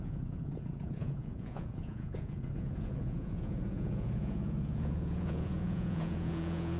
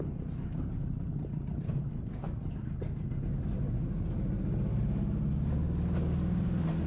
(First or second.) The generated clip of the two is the first